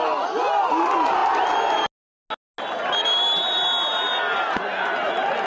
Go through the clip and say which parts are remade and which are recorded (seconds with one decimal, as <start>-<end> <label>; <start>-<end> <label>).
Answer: 0.0-5.5 recorded